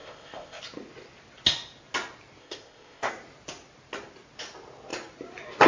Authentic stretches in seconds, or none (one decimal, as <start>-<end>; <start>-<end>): 0.6-2.4; 3.1-5.7